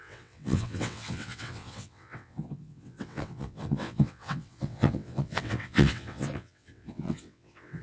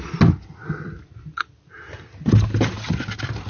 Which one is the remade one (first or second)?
first